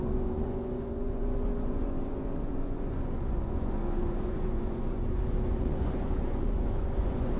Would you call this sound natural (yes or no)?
no